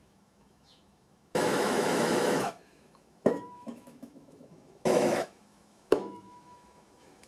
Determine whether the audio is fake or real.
fake